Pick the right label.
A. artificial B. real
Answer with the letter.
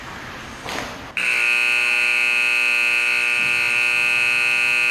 B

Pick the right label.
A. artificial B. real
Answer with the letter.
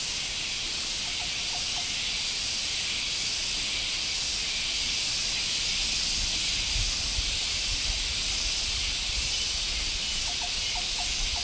B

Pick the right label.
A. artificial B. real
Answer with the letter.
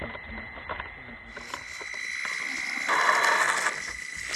B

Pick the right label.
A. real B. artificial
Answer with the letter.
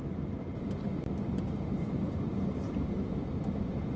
A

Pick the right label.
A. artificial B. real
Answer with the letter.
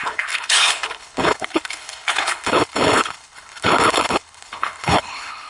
A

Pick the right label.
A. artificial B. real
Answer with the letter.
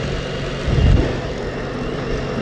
B